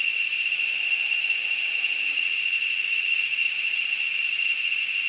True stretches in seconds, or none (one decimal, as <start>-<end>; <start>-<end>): 0.0-1.2; 3.8-5.1